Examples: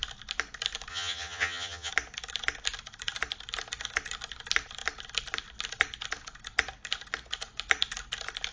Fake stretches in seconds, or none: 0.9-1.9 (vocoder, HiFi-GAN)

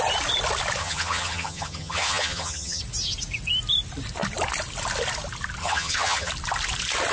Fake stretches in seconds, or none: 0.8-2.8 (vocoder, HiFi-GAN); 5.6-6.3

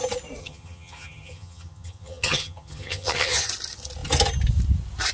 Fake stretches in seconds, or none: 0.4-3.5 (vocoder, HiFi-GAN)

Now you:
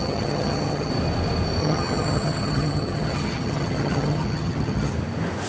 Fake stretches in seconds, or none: 0.0-0.9 (vocoder, HiFi-GAN); 1.6-4.9

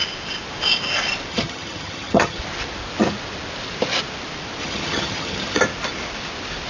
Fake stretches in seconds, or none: 1.3-2.4 (vocoder, HiFi-GAN); 4.6-5.6